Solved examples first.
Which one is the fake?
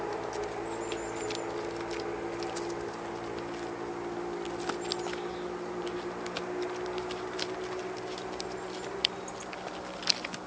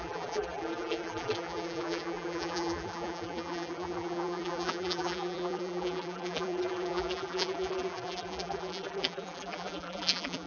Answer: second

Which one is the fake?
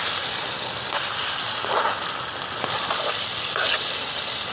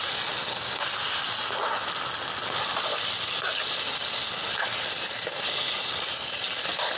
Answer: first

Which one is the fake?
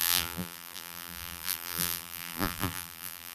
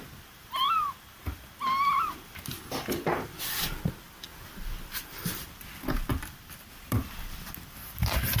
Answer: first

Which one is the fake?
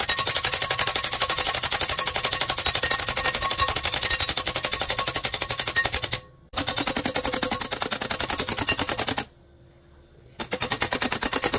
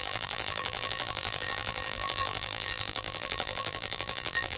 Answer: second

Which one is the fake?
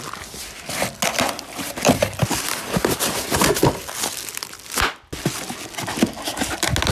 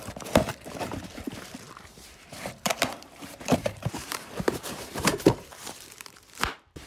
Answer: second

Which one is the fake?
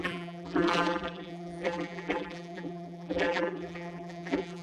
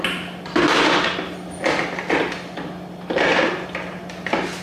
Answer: first